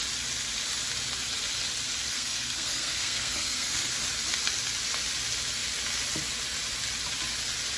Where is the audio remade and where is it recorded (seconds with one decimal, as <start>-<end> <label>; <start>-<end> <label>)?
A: 0.0-2.1 recorded; 2.1-3.9 remade; 3.9-7.8 recorded

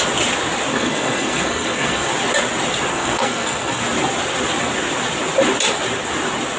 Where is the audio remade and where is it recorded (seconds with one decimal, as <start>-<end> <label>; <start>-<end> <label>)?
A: 0.0-0.7 recorded; 0.7-2.1 remade; 2.1-2.9 recorded; 2.9-3.8 remade; 3.8-6.6 recorded

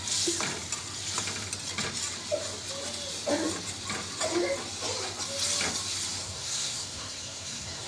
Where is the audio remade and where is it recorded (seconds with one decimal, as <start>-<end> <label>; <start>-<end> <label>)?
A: 0.0-6.2 recorded; 6.2-7.9 remade

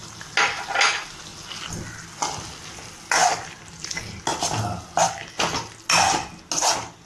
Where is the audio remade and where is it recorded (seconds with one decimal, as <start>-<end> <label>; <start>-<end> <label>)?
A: 0.0-7.1 recorded

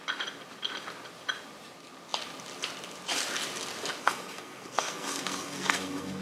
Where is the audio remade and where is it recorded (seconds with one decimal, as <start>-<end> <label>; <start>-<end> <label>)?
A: 0.0-4.0 recorded; 4.0-6.2 remade